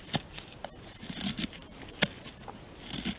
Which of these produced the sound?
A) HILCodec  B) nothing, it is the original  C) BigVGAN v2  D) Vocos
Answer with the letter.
B